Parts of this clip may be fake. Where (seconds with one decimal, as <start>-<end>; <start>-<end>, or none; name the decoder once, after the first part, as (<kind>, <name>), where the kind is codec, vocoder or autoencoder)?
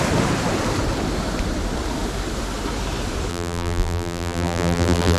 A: 3.3-5.2 (vocoder, BigVGAN v2)